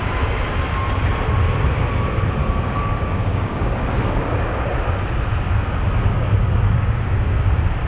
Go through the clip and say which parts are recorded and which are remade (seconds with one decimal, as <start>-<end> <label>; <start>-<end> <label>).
0.0-2.4 recorded; 2.4-4.2 remade; 4.2-6.1 recorded; 6.1-7.5 remade; 7.5-7.9 recorded